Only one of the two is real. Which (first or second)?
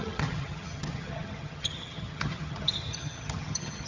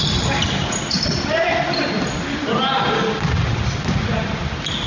second